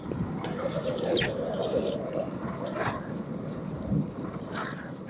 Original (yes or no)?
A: no